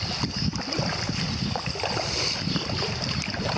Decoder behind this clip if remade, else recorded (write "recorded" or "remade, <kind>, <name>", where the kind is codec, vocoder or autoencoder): recorded